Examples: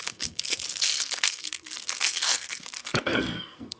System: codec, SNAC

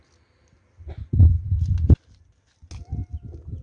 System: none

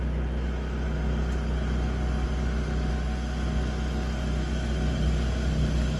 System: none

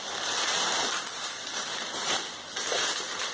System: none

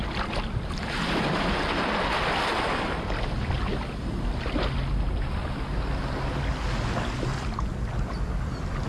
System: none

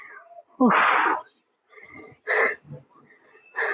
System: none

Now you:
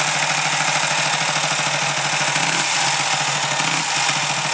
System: none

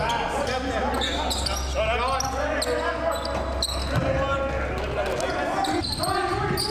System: none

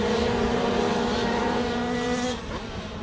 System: vocoder, BigVGAN v2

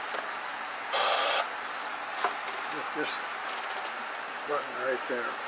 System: none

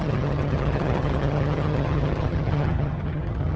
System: vocoder, HiFi-GAN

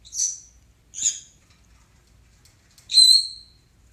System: none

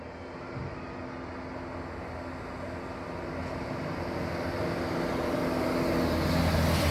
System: none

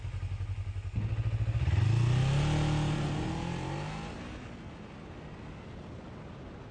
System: none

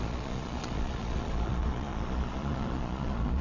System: vocoder, Vocos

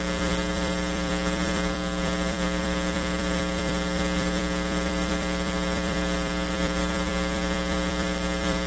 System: vocoder, BigVGAN v2